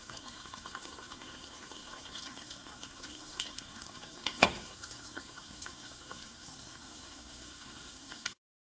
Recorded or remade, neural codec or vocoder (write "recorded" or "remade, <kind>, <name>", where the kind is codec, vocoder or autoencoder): remade, codec, SNAC